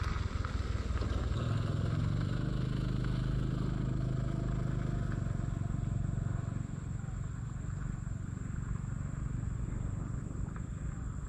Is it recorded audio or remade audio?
recorded